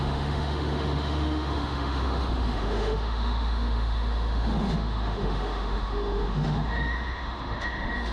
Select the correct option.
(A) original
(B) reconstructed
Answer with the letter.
B